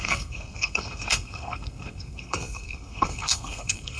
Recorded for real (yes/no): no